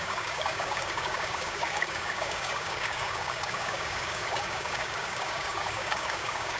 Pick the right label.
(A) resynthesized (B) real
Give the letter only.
A